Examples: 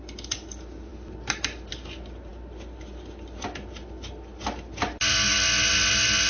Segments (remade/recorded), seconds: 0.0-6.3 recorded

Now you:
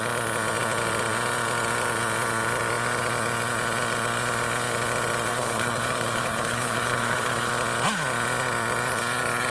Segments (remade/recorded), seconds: 0.0-5.3 recorded; 5.3-7.5 remade; 7.5-9.5 recorded

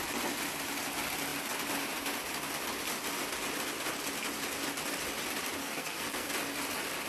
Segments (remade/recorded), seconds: 0.0-5.6 recorded; 5.6-6.3 remade; 6.3-7.1 recorded

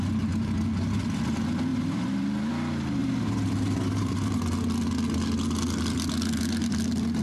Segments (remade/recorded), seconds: 0.0-1.7 recorded; 1.7-2.5 remade; 2.5-3.0 recorded; 3.0-4.4 remade; 4.4-7.2 recorded

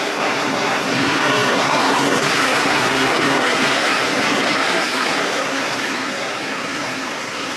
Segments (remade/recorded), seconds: 0.0-7.6 remade

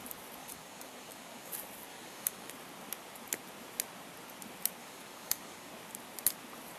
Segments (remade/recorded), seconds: 0.0-0.4 recorded; 0.4-1.5 remade; 1.5-1.9 recorded; 1.9-2.5 remade; 2.5-4.8 recorded; 4.8-5.7 remade; 5.7-6.8 recorded

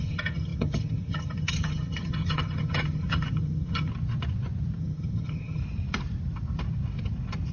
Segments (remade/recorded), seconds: 0.0-3.9 remade; 3.9-4.8 recorded; 4.8-5.6 remade; 5.6-7.5 recorded

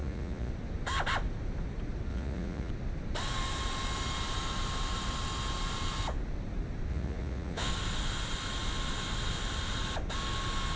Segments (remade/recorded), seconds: 0.0-0.5 remade; 0.5-2.1 recorded; 2.1-2.7 remade; 2.7-6.9 recorded; 6.9-7.7 remade; 7.7-10.8 recorded